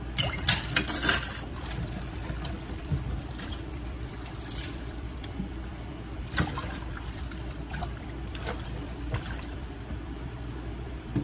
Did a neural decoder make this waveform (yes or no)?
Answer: yes